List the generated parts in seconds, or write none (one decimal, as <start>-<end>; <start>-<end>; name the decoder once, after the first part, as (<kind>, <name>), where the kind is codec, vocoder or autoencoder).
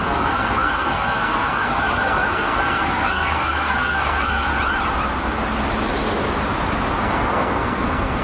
0.0-4.5 (codec, SNAC); 7.0-8.2